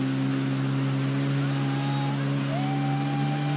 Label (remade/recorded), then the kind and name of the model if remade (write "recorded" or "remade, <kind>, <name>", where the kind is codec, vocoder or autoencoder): recorded